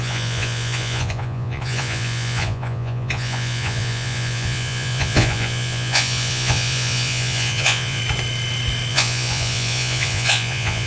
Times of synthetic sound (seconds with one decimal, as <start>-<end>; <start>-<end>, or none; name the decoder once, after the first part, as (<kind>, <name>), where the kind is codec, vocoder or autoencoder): 0.0-8.0 (vocoder, Vocos); 8.9-10.9